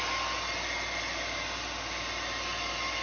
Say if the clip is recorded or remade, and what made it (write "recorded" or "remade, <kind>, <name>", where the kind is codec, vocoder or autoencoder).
recorded